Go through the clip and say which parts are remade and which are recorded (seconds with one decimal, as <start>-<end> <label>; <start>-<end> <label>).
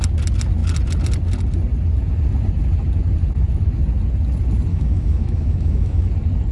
0.0-4.7 recorded; 4.7-6.1 remade; 6.1-6.5 recorded